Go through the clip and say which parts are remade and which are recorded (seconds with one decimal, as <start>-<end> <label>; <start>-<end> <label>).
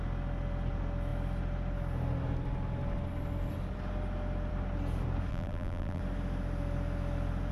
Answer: 0.0-5.3 recorded; 5.3-6.0 remade; 6.0-7.5 recorded